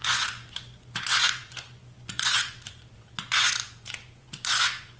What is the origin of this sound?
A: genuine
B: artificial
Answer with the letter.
B